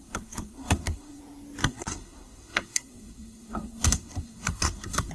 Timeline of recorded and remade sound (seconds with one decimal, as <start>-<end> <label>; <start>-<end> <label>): 0.0-1.2 remade; 1.2-1.6 recorded; 1.6-5.1 remade